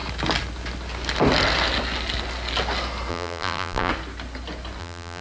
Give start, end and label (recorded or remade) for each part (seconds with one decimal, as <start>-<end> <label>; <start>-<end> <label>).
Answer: 0.0-3.1 recorded; 3.1-3.9 remade; 3.9-4.8 recorded; 4.8-5.2 remade